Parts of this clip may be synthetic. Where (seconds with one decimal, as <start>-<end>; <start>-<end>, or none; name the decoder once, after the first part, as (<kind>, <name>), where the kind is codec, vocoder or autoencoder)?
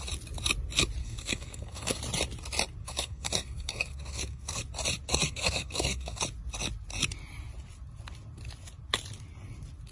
1.0-2.0 (codec, SNAC); 2.8-4.6; 5.1-6.2